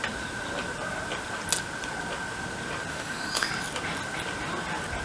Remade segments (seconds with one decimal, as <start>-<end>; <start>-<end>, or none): 2.9-3.5